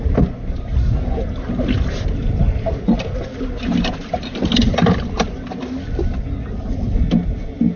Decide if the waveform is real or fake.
real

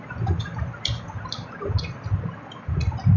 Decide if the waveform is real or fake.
real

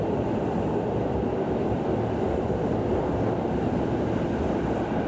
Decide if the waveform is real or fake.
real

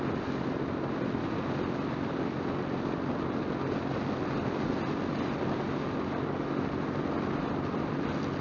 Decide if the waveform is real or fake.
real